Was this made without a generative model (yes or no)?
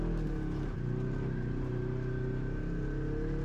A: yes